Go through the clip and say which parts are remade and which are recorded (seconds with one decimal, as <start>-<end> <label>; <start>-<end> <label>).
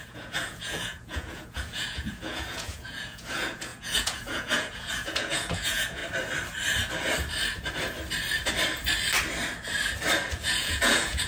0.0-6.0 remade; 6.0-10.3 recorded; 10.3-11.3 remade